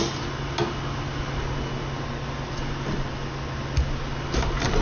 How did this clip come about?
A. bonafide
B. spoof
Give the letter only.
A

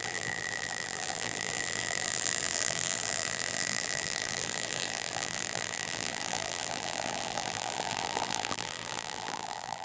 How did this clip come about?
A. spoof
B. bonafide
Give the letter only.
A